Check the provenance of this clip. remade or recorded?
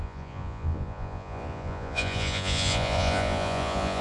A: remade